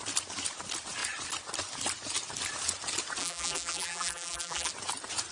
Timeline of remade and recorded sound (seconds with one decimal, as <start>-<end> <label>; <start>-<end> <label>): 0.0-3.2 recorded; 3.2-4.7 remade; 4.7-5.3 recorded